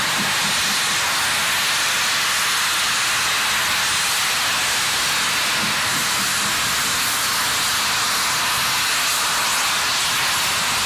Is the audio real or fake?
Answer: real